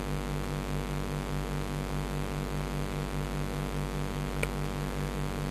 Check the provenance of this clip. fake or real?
real